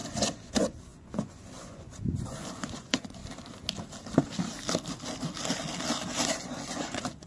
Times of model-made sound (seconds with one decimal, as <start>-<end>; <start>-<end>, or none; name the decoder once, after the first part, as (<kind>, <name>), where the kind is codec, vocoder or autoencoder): 0.0-3.2 (vocoder, Vocos); 6.3-7.3